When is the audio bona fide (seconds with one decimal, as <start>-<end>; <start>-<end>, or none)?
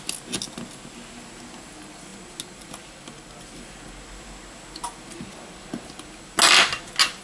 0.0-7.2